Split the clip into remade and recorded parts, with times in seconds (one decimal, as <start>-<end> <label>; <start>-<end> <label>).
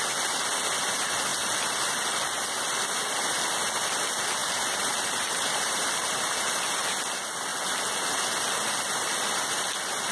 0.0-4.4 recorded; 4.4-5.9 remade; 5.9-10.1 recorded